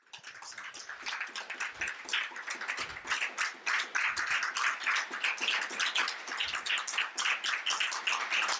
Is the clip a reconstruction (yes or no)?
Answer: no